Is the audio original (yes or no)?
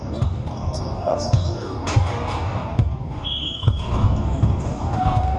no